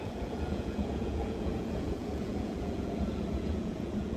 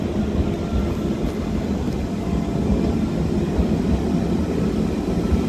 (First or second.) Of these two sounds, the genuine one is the second